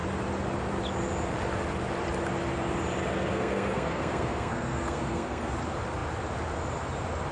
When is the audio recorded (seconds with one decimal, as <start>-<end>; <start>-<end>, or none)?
0.0-3.1; 5.5-7.3